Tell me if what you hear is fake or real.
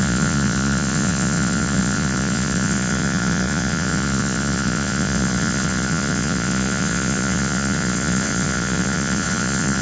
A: fake